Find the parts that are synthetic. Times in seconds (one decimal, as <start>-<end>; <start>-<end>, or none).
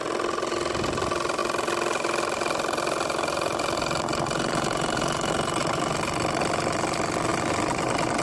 0.0-1.4; 5.3-8.2